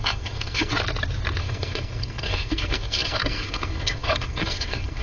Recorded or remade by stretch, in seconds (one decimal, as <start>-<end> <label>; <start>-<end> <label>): 0.0-0.7 remade; 0.7-1.4 recorded; 1.4-5.0 remade